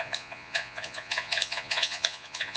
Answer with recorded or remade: remade